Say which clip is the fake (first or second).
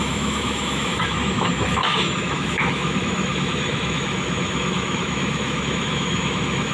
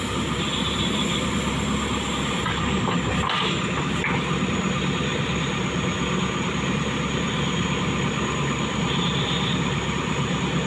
first